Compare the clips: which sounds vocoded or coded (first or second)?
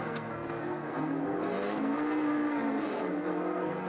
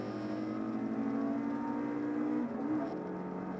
first